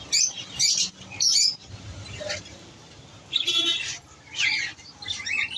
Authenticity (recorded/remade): remade